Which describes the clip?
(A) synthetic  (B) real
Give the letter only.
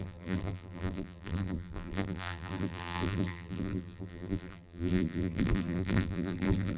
A